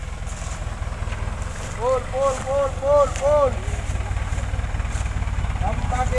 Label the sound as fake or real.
real